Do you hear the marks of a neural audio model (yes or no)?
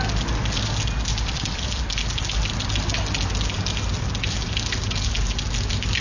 no